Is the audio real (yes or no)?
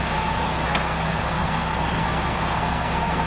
no